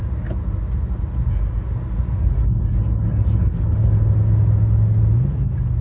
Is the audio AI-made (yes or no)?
no